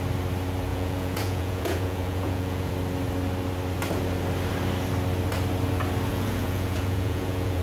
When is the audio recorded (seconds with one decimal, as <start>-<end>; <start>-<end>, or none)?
0.0-0.7; 2.7-6.1